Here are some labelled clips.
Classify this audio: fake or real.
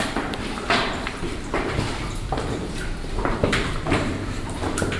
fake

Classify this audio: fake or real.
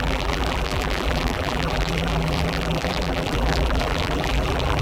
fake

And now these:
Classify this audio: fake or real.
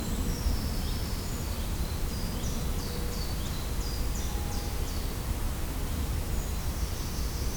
fake